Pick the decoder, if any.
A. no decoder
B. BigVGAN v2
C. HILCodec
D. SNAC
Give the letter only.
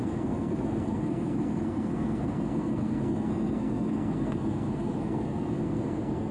D